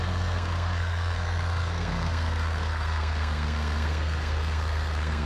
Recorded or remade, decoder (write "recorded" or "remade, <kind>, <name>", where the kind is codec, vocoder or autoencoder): remade, codec, SNAC